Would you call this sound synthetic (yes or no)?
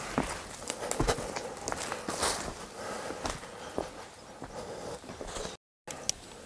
no